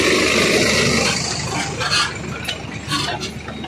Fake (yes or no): no